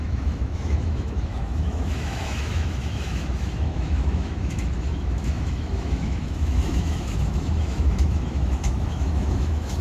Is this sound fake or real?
fake